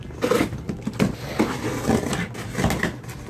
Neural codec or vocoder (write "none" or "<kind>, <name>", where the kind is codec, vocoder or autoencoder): none